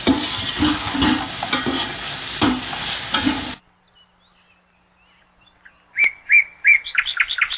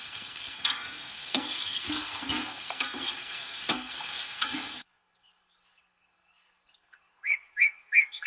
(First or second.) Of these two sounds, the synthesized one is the second